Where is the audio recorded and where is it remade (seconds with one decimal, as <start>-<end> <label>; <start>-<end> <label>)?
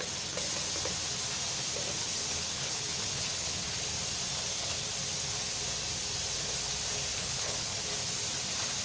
0.0-2.0 recorded; 2.0-3.9 remade; 3.9-7.1 recorded; 7.1-7.8 remade; 7.8-8.8 recorded